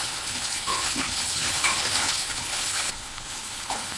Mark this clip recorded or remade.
remade